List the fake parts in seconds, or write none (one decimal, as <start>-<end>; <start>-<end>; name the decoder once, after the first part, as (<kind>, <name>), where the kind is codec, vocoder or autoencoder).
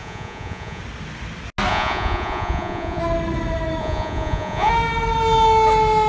0.0-0.8 (vocoder, Vocos); 1.7-3.0; 3.8-4.7